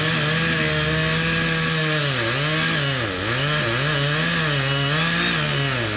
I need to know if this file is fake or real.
real